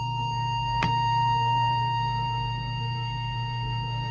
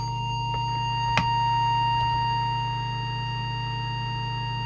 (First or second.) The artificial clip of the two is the first